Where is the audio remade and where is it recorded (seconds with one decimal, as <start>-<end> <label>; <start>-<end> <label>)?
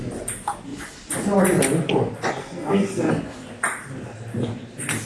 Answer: 0.0-2.4 recorded; 2.4-3.1 remade; 3.1-5.1 recorded